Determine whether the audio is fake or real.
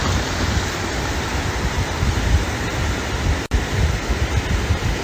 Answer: real